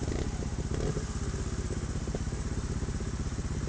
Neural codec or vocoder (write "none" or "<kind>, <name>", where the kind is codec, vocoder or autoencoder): none